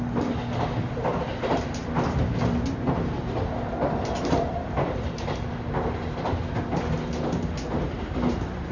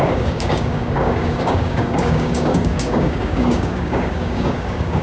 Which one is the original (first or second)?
first